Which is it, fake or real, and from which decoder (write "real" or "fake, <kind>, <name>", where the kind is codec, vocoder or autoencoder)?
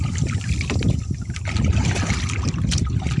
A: fake, vocoder, BigVGAN v2